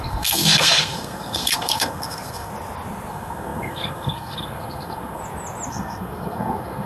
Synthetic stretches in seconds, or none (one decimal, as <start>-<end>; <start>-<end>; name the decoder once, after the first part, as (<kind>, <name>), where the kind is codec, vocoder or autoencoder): 0.0-2.5 (codec, SNAC); 3.1-5.2; 5.7-6.9